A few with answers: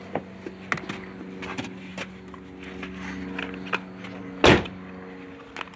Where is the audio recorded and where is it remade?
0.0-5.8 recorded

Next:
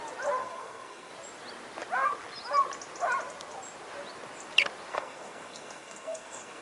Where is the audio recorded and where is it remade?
0.0-0.4 recorded; 0.4-1.1 remade; 1.1-4.9 recorded; 4.9-6.6 remade